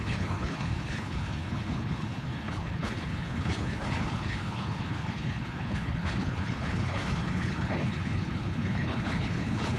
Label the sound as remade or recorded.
remade